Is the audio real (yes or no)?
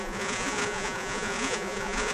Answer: no